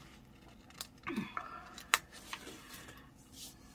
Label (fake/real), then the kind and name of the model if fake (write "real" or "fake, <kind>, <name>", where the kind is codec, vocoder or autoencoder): real